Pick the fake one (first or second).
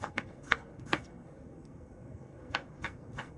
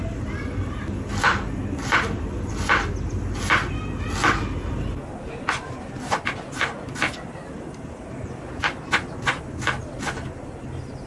first